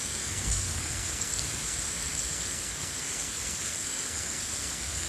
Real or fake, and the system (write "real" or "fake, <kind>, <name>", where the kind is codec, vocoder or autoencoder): fake, codec, SNAC